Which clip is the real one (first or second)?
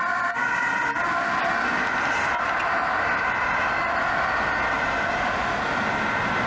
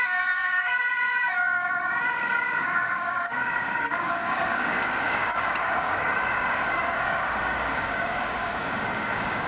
first